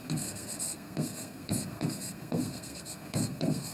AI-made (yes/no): yes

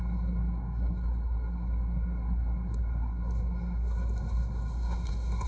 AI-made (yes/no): yes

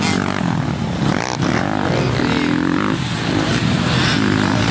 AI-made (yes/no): no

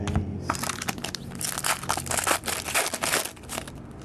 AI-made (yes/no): no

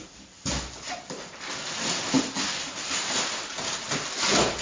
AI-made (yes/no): no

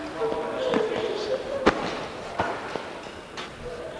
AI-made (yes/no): no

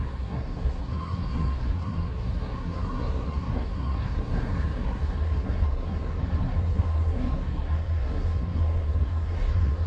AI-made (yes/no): yes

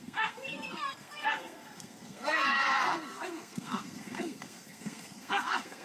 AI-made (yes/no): yes